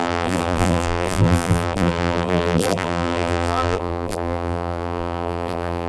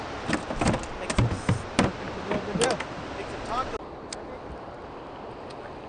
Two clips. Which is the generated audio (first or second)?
first